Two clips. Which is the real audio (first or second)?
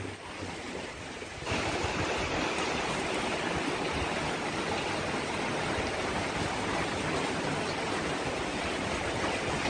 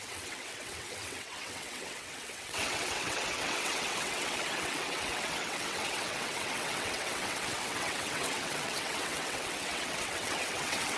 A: first